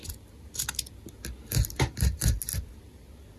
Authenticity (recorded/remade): recorded